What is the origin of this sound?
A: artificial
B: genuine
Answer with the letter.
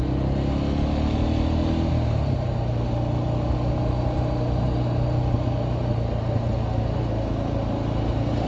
B